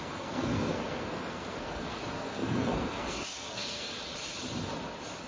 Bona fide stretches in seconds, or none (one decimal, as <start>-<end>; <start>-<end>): 3.9-5.3